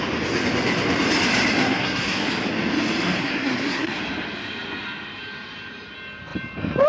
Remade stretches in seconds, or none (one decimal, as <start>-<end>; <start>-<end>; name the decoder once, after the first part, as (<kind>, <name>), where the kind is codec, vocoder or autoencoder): 1.6-2.3 (codec, SNAC); 3.2-4.0